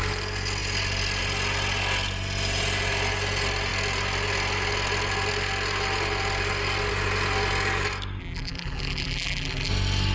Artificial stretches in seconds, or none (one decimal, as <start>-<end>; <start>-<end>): 8.2-9.7